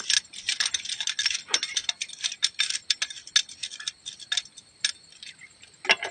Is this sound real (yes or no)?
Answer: yes